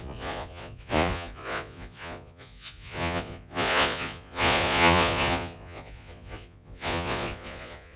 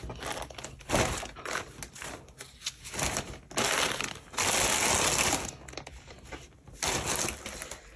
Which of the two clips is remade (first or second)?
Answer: first